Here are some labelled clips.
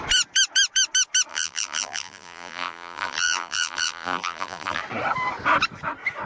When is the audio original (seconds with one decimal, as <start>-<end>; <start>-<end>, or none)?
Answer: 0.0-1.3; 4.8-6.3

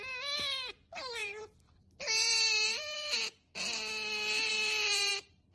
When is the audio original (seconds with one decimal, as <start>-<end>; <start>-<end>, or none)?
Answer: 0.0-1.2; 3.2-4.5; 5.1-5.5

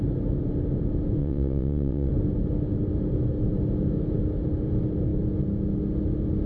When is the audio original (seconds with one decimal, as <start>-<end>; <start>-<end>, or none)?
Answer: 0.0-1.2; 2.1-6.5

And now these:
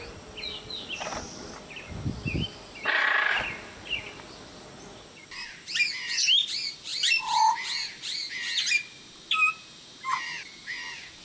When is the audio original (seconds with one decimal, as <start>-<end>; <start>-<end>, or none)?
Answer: 0.0-11.2